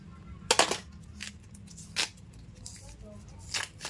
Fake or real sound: real